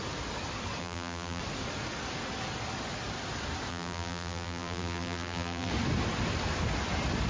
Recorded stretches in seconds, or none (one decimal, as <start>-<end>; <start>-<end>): 0.0-0.8; 1.4-3.7; 5.7-7.3